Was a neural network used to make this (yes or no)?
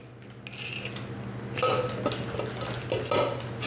no